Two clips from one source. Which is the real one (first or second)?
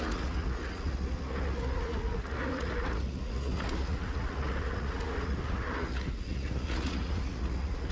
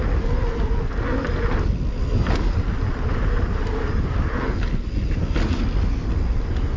second